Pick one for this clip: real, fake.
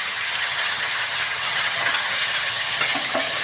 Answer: fake